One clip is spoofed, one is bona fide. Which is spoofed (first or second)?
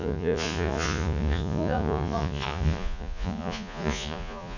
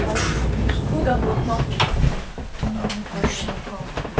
first